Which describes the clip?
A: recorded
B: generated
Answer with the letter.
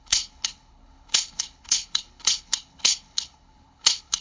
B